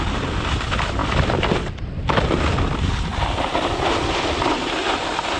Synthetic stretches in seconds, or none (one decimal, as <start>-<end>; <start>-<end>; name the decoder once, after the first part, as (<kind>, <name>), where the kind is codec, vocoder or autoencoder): 1.0-2.6 (vocoder, BigVGAN v2); 3.1-4.8